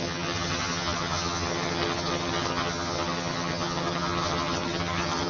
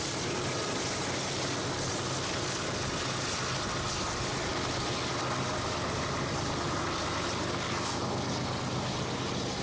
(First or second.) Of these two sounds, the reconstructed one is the first